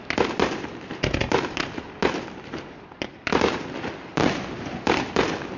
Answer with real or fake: real